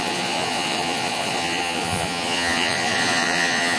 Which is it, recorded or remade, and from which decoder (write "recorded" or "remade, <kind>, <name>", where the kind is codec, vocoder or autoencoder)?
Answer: remade, vocoder, Vocos